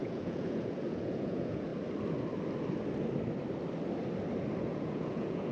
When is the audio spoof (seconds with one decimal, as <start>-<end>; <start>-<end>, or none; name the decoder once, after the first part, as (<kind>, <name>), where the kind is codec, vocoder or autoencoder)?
0.0-1.7 (vocoder, Vocos); 4.7-5.5